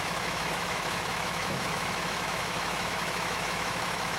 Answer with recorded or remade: remade